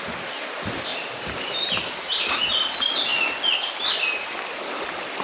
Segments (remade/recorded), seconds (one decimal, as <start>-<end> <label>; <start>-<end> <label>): 0.0-0.9 recorded; 0.9-2.5 remade; 2.5-5.2 recorded